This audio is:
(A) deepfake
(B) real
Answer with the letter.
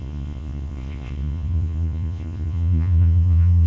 A